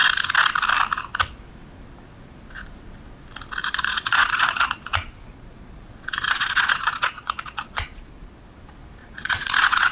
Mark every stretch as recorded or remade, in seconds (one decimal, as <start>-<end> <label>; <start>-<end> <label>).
0.0-3.6 recorded; 3.6-8.3 remade; 8.3-9.0 recorded; 9.0-9.9 remade